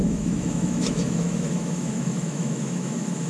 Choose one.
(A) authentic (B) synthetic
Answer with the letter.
B